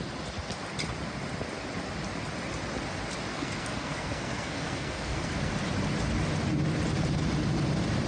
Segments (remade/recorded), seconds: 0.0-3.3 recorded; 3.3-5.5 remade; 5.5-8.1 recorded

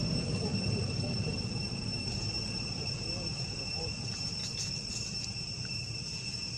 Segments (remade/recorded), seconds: 0.0-4.4 remade; 4.4-4.9 recorded; 4.9-6.6 remade